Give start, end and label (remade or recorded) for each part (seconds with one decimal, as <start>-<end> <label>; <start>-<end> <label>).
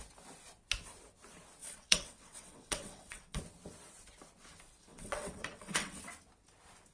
0.0-1.6 recorded; 1.6-3.4 remade; 3.4-4.9 recorded; 4.9-6.0 remade; 6.0-6.9 recorded